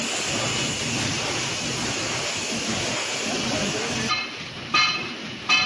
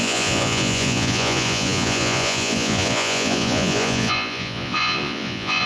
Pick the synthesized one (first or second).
second